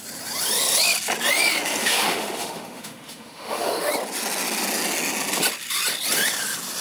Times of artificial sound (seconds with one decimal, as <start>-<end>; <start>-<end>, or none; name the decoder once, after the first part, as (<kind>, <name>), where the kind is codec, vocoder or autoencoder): 1.8-3.9 (autoencoder, DAC-VAE)

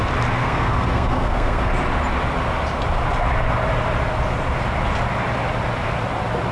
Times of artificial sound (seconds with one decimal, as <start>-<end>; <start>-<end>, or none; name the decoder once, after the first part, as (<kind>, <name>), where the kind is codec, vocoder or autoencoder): 0.4-1.7 (codec, SNAC)

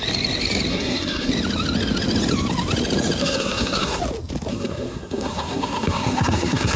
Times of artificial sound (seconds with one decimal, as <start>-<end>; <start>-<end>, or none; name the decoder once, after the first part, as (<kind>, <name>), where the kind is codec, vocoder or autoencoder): 0.7-1.3 (codec, SNAC); 3.2-4.0; 4.5-6.8

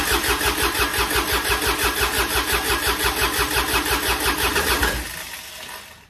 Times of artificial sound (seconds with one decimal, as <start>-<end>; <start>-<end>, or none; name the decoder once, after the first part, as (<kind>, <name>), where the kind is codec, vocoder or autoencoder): none

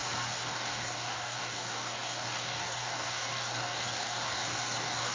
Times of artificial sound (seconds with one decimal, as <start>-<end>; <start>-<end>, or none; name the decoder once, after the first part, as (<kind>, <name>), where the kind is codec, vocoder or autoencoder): 0.0-5.1 (codec, DAC)